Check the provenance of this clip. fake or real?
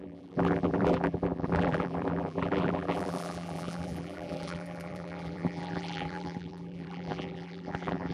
fake